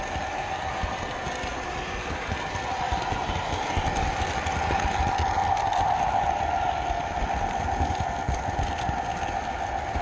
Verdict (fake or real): real